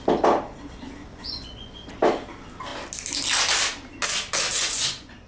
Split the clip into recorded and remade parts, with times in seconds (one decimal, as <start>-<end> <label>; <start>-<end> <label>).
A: 0.0-1.1 recorded; 1.1-2.0 remade; 2.0-4.6 recorded; 4.6-5.3 remade